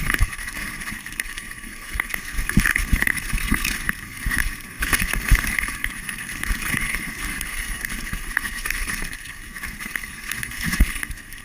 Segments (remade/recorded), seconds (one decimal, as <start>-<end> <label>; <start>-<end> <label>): 0.0-11.4 remade